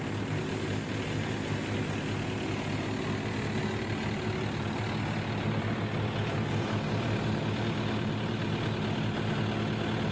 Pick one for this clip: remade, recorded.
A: recorded